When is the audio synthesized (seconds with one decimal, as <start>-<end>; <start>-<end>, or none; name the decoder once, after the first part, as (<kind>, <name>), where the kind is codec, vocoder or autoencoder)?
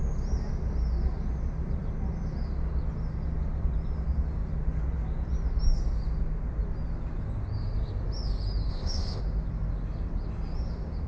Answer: 8.7-9.2 (codec, ZipCodec)